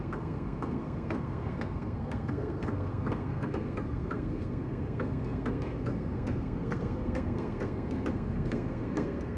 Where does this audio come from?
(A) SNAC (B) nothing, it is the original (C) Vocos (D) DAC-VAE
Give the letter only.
A